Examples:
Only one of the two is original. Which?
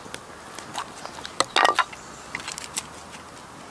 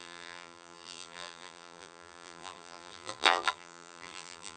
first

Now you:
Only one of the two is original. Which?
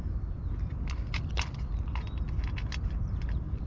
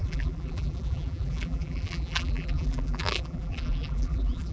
first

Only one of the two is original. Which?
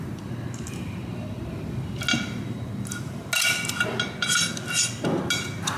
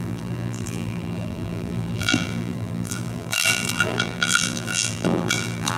first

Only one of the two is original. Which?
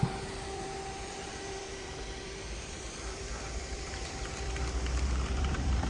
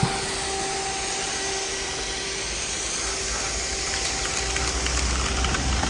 second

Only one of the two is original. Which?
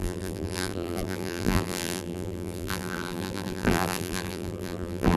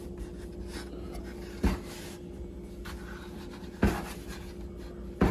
second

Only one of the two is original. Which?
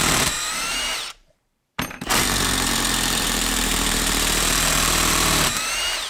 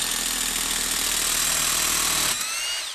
second